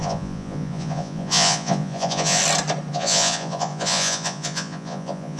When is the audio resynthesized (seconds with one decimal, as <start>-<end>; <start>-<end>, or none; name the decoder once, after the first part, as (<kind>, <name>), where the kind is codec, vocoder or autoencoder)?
0.0-2.4 (vocoder, Vocos); 2.9-5.4